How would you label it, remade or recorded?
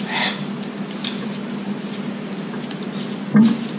recorded